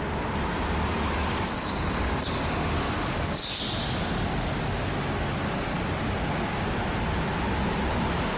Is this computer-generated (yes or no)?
no